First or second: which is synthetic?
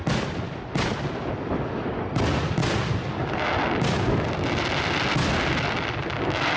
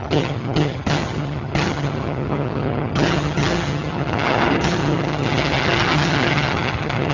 second